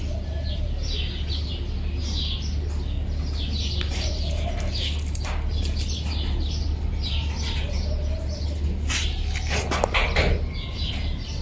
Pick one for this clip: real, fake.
real